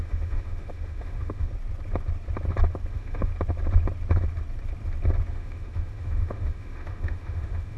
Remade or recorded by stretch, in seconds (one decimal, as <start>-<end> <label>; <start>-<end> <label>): 0.0-1.5 remade; 1.5-2.9 recorded; 2.9-3.3 remade; 3.3-5.3 recorded; 5.3-7.8 remade